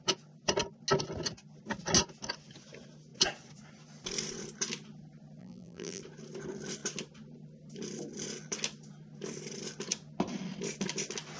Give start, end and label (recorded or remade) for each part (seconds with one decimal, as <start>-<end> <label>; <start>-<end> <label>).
0.0-5.4 recorded; 5.4-6.0 remade; 6.0-11.4 recorded